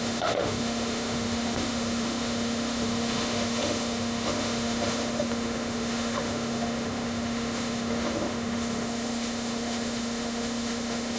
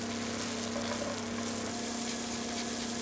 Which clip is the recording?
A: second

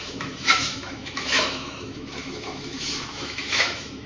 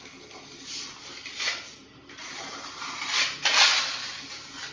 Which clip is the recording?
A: second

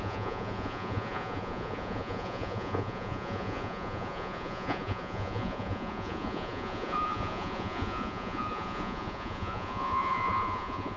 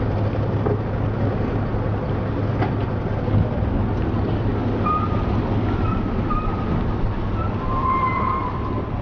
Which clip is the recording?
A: second